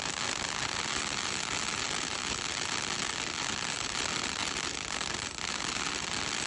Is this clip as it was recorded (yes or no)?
yes